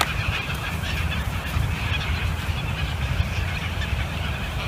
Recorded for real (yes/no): yes